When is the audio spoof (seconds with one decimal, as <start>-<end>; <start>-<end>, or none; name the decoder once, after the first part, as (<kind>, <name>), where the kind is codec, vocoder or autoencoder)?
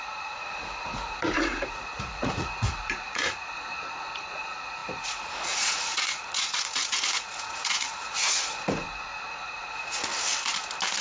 0.0-10.1 (vocoder, Vocos)